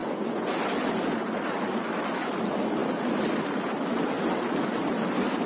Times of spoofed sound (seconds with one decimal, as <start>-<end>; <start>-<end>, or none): 0.0-0.5